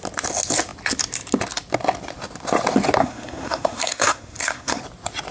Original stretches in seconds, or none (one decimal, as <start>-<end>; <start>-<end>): 0.0-3.0; 4.8-5.3